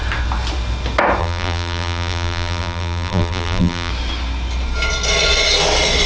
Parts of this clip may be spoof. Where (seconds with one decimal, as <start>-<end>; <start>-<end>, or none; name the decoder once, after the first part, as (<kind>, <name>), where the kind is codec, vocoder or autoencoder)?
1.2-3.9 (vocoder, BigVGAN v2)